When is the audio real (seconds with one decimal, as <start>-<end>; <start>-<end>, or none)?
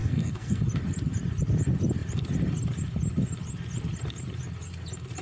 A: 0.6-5.2